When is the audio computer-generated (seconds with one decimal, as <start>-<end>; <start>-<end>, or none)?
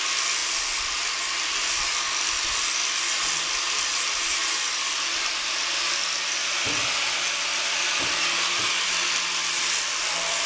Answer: none